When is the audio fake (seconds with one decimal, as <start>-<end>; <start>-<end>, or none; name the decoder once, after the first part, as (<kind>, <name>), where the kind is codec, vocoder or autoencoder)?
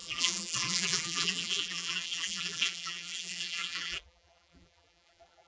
0.0-5.5 (vocoder, BigVGAN v2)